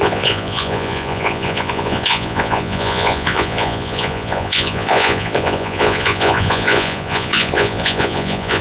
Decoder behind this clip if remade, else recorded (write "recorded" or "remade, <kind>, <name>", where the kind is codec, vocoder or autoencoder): remade, vocoder, Vocos